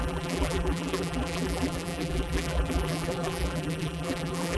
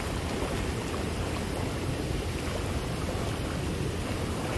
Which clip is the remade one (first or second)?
first